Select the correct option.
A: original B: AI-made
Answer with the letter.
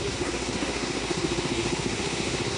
B